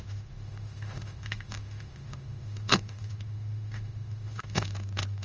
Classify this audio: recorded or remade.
remade